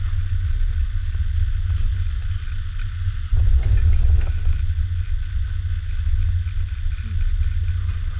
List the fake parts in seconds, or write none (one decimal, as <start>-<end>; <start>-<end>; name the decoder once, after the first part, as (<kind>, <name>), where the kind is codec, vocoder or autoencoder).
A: none